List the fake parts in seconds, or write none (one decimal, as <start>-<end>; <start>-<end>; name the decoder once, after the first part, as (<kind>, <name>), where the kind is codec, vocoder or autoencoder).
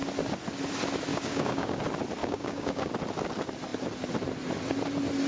1.1-1.8 (codec, DAC); 2.2-2.9